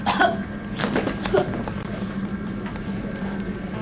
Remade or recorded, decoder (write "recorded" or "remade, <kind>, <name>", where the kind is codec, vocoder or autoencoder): recorded